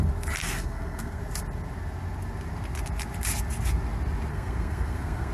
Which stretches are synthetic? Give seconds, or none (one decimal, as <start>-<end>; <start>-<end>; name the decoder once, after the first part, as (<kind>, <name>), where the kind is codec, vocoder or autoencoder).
0.4-1.2 (codec, SNAC); 4.3-5.3